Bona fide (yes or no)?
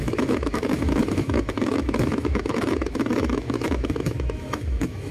no